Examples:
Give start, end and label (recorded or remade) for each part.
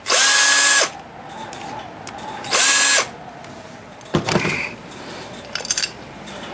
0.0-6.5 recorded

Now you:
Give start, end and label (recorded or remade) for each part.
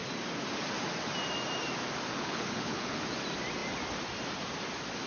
0.0-2.1 recorded; 2.1-3.0 remade; 3.0-5.1 recorded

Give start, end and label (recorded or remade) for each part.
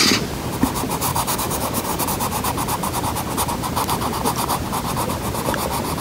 0.0-1.1 recorded; 1.1-2.0 remade; 2.0-6.0 recorded